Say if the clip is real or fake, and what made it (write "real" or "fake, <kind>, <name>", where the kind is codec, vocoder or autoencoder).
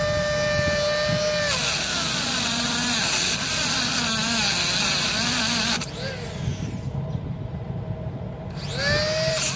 real